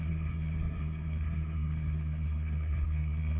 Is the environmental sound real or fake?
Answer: fake